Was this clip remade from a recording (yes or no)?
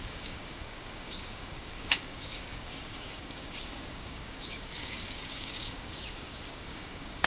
yes